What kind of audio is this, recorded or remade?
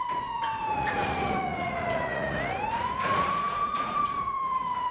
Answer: remade